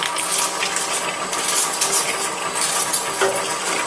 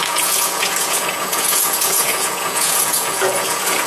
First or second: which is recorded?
first